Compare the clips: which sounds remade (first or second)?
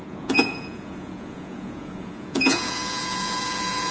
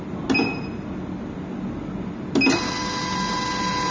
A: first